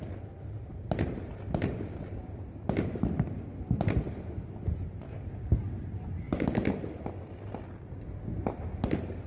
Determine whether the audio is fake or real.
real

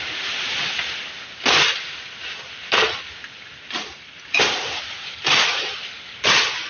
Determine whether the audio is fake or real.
real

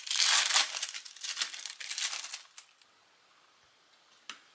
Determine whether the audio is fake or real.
real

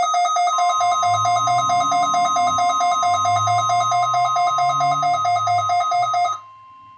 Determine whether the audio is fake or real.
real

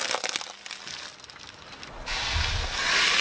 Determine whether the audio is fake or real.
real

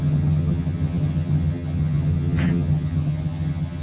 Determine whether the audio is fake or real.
fake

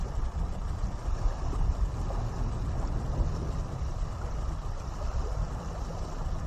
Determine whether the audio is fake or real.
real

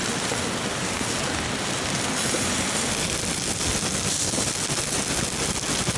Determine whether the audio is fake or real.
real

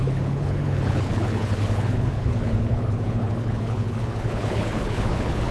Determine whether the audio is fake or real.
fake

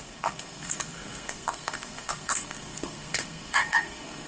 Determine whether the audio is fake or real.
fake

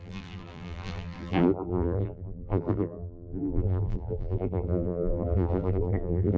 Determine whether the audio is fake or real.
fake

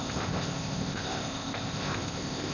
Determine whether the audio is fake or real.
fake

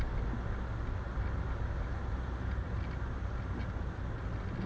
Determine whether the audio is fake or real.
real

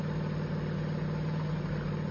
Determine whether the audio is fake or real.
real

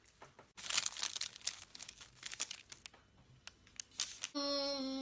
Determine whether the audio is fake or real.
real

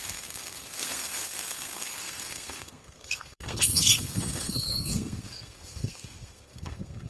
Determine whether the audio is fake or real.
fake